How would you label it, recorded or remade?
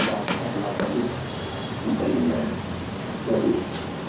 remade